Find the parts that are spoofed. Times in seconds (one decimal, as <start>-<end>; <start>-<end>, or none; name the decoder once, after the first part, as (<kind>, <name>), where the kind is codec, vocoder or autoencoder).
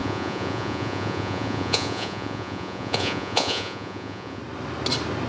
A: 0.0-4.4 (vocoder, Vocos)